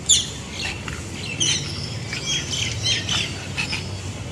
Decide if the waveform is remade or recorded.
remade